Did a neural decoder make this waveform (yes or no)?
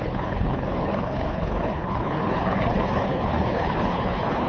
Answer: yes